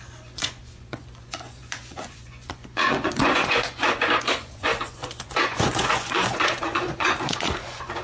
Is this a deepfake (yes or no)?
yes